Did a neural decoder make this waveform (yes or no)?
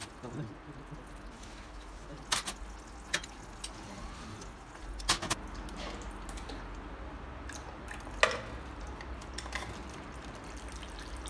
no